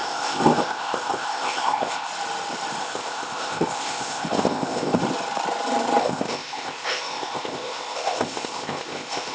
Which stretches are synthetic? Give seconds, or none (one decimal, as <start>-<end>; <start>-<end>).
0.0-2.1; 2.8-5.0; 6.0-9.3